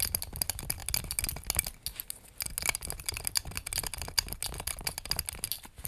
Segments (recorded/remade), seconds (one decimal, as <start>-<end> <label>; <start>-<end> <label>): 0.0-5.9 recorded